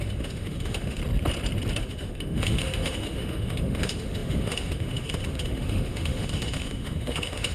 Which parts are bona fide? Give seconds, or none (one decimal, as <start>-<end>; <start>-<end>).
1.0-1.8